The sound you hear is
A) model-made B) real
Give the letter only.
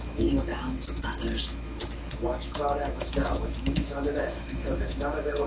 A